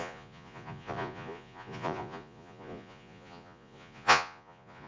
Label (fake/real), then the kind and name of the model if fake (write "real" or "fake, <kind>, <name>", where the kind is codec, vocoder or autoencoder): fake, vocoder, Vocos